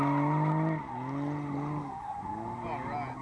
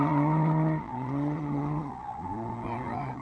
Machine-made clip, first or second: second